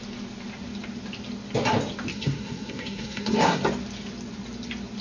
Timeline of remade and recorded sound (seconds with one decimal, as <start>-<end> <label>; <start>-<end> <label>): 0.0-2.1 recorded; 2.1-3.6 remade; 3.6-5.0 recorded